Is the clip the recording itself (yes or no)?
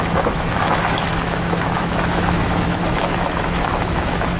no